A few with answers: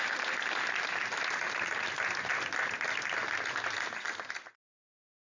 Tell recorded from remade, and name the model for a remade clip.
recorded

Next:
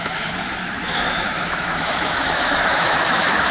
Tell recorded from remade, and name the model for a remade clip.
remade, autoencoder, DAC-VAE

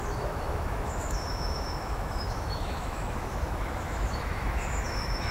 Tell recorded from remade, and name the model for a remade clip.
remade, autoencoder, DAC-VAE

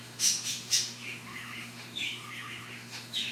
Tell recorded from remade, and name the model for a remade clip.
remade, autoencoder, DAC-VAE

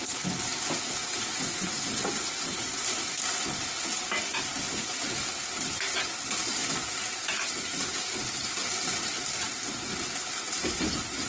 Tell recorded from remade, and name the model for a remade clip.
recorded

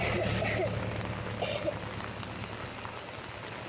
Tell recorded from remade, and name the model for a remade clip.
recorded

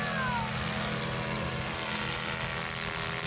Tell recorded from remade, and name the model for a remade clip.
recorded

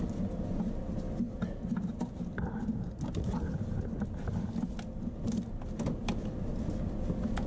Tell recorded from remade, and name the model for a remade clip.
recorded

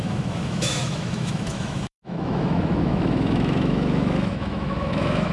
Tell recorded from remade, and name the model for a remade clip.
remade, autoencoder, DAC-VAE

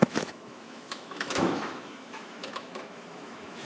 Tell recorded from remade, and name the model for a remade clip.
remade, autoencoder, DAC-VAE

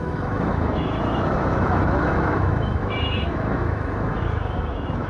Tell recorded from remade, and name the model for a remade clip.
remade, autoencoder, DAC-VAE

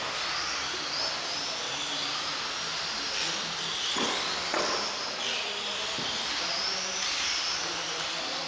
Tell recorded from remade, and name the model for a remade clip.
recorded